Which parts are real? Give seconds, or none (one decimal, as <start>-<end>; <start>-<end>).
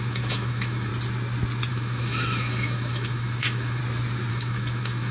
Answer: 0.9-1.7; 3.8-4.3